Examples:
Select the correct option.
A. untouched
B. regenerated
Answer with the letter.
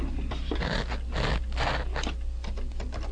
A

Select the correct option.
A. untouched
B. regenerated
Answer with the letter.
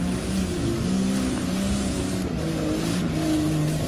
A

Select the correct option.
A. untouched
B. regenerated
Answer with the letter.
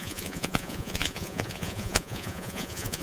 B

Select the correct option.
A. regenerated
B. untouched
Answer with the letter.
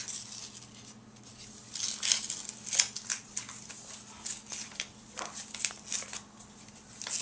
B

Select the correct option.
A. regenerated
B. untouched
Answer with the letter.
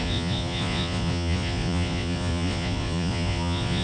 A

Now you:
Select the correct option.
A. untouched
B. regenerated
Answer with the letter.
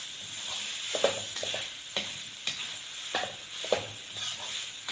A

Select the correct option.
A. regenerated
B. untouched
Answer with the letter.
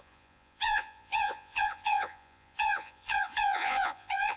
A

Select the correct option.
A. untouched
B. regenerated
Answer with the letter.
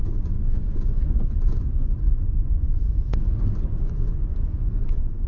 B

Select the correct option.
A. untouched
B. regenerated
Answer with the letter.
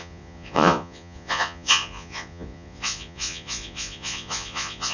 B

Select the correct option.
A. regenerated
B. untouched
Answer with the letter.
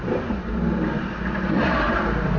B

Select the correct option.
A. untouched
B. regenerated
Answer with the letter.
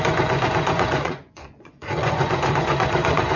B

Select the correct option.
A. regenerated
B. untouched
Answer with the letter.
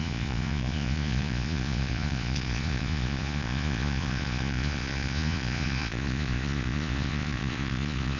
A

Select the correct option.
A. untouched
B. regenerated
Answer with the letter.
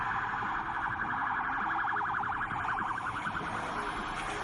A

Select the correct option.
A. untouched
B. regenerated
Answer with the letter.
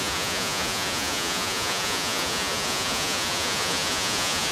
B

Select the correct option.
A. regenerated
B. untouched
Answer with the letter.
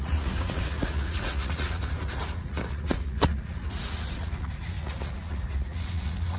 A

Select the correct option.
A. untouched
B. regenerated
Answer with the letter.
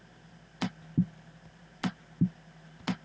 A